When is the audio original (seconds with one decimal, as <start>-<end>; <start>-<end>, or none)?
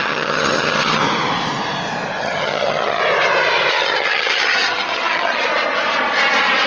1.0-2.2; 3.0-3.7; 5.5-6.7